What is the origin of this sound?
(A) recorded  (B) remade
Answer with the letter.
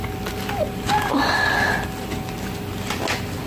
A